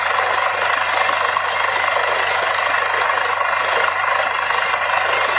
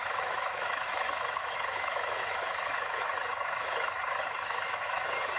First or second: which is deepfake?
second